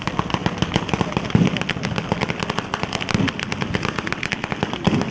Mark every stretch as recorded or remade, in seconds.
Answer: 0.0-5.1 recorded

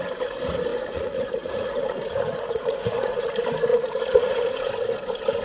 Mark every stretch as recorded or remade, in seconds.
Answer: 0.0-0.7 recorded; 0.7-3.3 remade; 3.3-3.7 recorded; 3.7-4.7 remade; 4.7-5.4 recorded

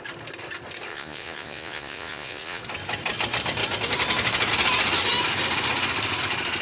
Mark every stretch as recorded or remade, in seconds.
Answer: 0.0-0.9 recorded; 0.9-2.6 remade; 2.6-6.6 recorded

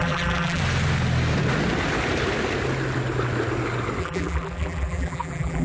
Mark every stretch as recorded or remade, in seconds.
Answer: 0.0-0.6 remade; 0.6-4.0 recorded; 4.0-5.6 remade

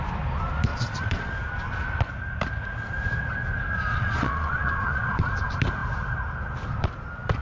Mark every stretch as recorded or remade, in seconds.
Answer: 0.0-0.7 recorded; 0.7-1.3 remade; 1.3-3.9 recorded; 3.9-5.3 remade; 5.3-7.4 recorded

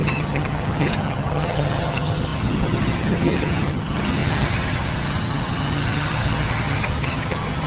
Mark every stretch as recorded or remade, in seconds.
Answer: 0.0-7.7 remade

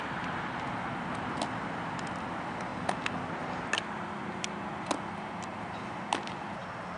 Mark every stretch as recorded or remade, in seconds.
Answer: 0.0-7.0 recorded